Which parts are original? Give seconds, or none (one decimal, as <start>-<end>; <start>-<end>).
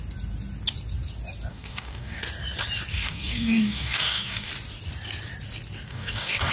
0.0-1.5; 2.2-2.9; 4.5-5.9